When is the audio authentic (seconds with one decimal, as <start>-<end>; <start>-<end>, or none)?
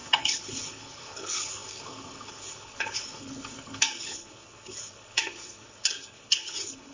none